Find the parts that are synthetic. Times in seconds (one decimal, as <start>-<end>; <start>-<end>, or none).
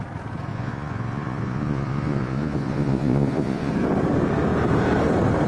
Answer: 0.5-3.7